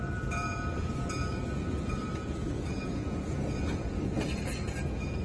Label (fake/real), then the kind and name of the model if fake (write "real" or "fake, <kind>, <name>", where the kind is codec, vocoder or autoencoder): fake, vocoder, Vocos